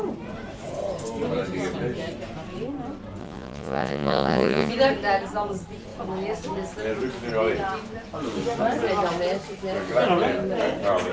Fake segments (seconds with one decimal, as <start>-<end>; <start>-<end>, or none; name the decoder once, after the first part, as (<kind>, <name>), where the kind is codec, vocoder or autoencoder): 3.2-4.7 (vocoder, Vocos)